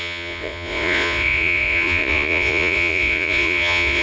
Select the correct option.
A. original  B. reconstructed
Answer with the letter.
B